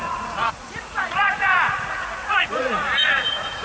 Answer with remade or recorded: remade